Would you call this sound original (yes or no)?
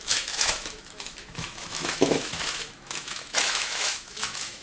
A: no